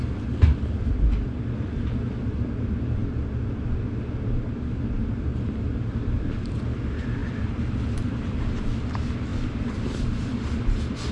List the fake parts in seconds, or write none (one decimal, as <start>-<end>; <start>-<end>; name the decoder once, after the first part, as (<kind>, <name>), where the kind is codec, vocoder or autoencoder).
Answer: 7.2-8.4 (vocoder, BigVGAN v2); 9.3-10.4